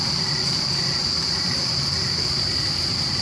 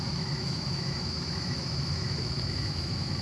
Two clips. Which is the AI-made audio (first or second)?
second